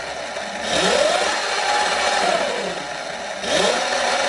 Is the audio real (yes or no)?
yes